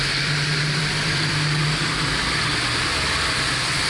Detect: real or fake fake